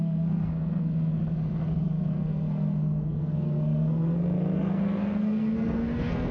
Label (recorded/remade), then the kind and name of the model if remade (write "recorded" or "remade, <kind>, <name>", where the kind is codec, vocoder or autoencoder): remade, codec, SNAC